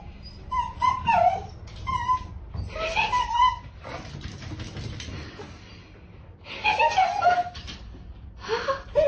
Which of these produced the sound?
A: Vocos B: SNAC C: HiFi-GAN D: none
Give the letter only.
D